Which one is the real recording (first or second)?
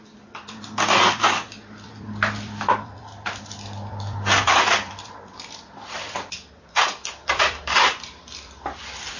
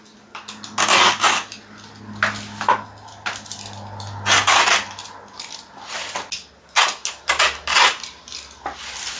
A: second